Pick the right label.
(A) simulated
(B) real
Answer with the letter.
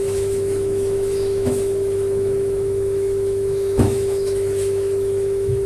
A